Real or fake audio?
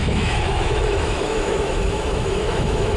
fake